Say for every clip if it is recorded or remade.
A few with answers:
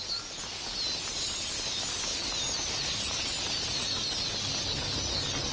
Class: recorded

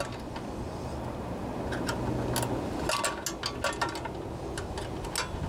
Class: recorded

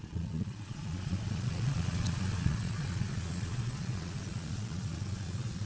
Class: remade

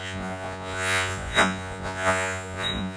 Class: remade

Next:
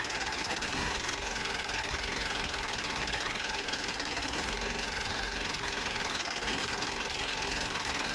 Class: remade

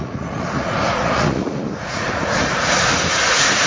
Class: remade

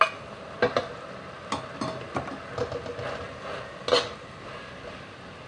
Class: recorded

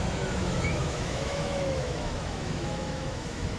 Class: remade